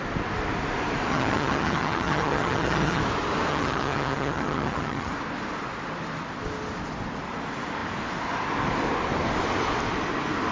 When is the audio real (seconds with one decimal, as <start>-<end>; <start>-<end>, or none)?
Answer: 0.0-1.1; 3.0-3.5; 5.1-10.5